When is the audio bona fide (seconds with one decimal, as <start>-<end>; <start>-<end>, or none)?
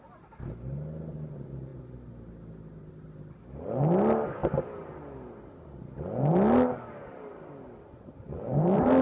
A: 0.0-9.0